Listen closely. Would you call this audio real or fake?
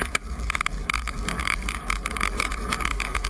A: fake